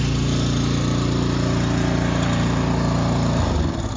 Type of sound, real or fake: real